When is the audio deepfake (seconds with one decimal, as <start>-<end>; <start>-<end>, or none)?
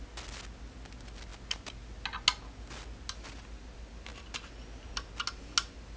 none